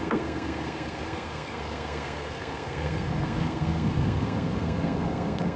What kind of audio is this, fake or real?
fake